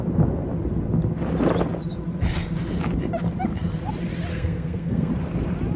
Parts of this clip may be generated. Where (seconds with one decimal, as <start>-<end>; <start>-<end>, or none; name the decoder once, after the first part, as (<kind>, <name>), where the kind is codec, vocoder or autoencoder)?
4.3-5.1 (codec, SNAC)